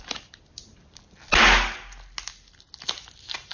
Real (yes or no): yes